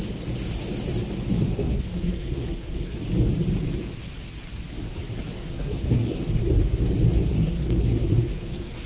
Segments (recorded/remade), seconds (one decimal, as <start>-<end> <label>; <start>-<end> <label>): 0.0-1.4 recorded; 1.4-3.0 remade; 3.0-5.3 recorded; 5.3-6.5 remade; 6.5-7.3 recorded; 7.3-8.9 remade